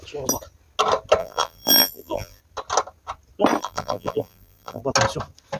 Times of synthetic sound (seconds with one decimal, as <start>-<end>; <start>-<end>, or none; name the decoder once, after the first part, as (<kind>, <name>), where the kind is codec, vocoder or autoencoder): 1.2-2.4 (vocoder, BigVGAN v2); 3.6-4.8